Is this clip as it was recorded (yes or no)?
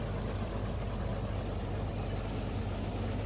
yes